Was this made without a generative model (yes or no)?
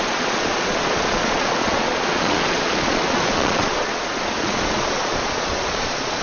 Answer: no